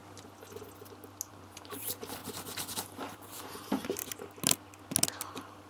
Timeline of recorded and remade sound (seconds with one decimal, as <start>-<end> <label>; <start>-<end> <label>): 0.0-1.3 recorded; 1.3-2.2 remade; 2.2-2.8 recorded; 2.8-4.0 remade; 4.0-5.3 recorded; 5.3-5.7 remade